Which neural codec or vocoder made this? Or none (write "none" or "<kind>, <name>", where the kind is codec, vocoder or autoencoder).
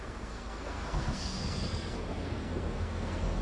codec, SNAC